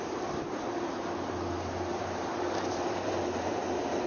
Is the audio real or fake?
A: fake